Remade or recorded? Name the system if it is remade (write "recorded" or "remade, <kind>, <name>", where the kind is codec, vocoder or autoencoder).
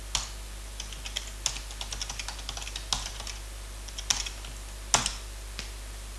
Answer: recorded